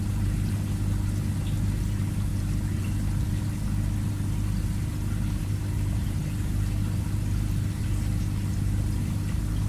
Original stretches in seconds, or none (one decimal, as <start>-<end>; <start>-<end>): 0.0-2.3; 3.4-5.4; 6.2-9.7

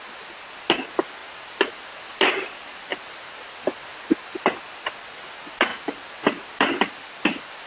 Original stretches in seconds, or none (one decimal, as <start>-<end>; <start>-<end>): 0.0-7.7

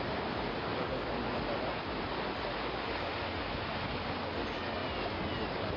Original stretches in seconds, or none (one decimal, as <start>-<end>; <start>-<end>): 0.0-5.8

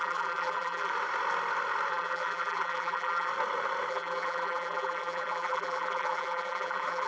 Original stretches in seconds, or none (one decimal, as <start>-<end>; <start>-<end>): 0.9-1.9; 3.3-3.9